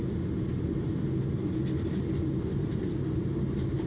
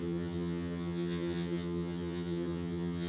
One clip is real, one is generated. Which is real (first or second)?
first